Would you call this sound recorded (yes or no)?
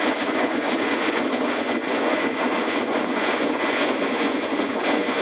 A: no